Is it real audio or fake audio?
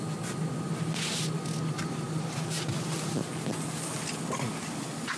real